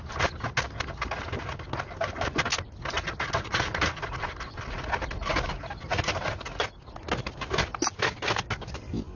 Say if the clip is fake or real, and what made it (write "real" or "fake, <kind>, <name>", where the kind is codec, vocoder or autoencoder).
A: real